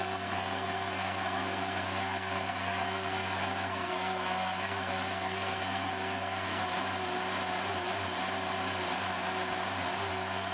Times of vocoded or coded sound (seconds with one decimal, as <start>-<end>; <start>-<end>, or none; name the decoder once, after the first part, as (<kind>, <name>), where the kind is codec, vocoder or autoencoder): 0.0-6.6 (codec, SNAC); 10.1-10.5